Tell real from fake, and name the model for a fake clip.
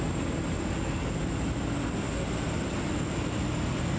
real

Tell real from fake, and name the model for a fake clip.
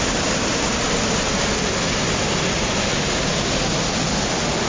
real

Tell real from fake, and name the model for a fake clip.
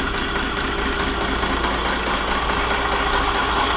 real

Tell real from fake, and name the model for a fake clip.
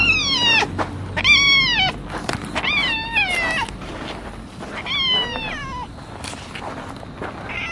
real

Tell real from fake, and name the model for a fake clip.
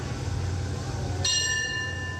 real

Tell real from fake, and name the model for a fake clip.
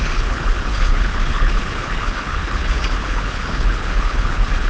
fake, codec, HILCodec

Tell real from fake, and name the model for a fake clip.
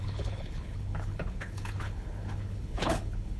fake, codec, HILCodec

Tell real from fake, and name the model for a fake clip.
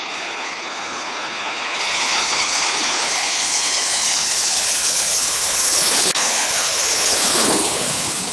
fake, codec, HILCodec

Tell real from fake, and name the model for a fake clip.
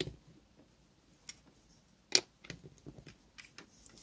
real